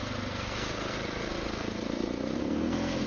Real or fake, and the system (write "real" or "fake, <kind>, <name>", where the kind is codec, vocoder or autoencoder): fake, codec, SNAC